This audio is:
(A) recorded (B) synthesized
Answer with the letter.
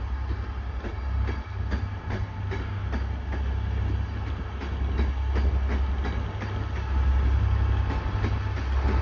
A